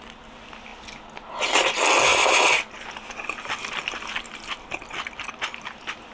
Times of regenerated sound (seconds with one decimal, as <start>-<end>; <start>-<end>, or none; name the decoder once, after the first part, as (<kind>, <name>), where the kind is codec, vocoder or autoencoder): none